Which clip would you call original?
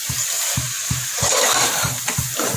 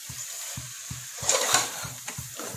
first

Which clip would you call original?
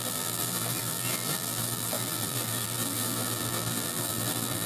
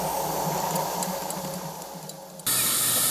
second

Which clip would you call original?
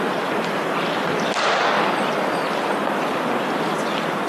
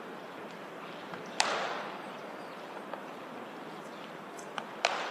first